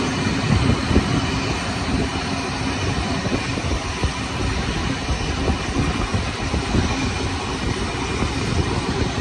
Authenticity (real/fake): real